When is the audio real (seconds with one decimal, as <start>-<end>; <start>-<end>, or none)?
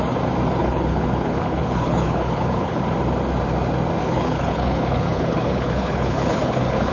0.0-0.6; 2.8-4.0